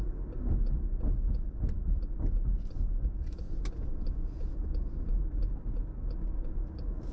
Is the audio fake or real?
real